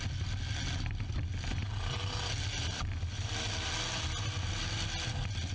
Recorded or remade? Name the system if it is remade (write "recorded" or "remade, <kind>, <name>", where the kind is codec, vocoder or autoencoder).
recorded